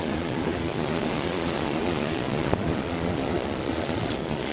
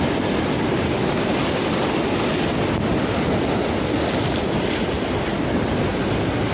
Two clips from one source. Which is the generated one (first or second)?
first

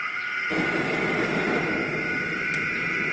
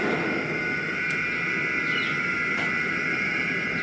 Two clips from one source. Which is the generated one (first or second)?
first